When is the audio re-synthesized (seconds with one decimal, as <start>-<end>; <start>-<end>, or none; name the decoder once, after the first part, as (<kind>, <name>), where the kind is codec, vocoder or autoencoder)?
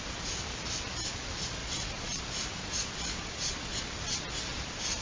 1.6-2.2 (vocoder, Vocos); 2.6-3.8